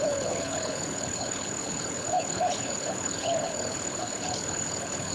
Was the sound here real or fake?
fake